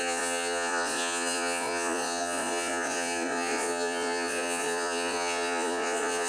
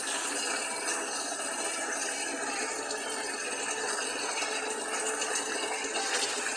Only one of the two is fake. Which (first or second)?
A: first